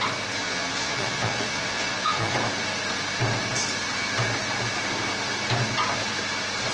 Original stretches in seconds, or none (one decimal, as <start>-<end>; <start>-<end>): 0.0-0.4; 2.3-6.7